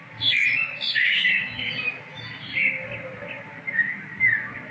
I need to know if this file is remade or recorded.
recorded